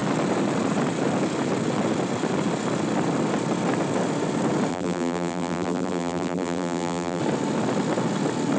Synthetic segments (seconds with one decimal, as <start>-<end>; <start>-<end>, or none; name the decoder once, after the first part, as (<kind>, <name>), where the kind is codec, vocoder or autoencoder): 4.7-7.2 (vocoder, BigVGAN v2)